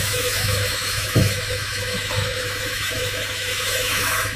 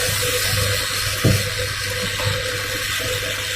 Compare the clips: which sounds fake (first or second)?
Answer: first